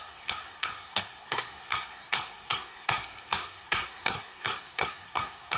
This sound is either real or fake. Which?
fake